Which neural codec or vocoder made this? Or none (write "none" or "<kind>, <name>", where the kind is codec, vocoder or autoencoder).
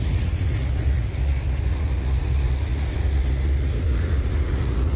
vocoder, Vocos